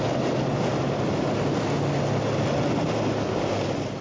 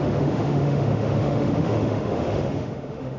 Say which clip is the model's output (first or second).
second